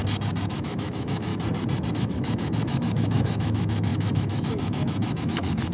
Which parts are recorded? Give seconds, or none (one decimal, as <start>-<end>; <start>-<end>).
0.0-0.5; 1.3-1.9